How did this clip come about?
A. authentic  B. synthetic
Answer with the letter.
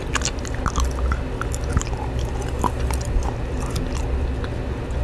A